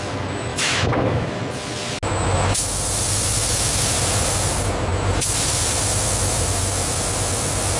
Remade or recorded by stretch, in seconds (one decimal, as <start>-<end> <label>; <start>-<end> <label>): 0.0-0.5 recorded; 0.5-1.4 remade; 1.4-7.8 recorded